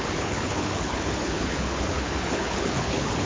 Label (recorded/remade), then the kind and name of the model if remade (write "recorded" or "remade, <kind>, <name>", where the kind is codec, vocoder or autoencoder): remade, codec, HILCodec